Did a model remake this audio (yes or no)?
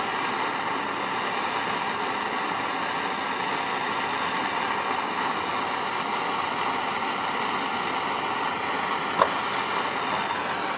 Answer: no